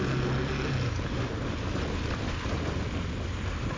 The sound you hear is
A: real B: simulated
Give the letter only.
A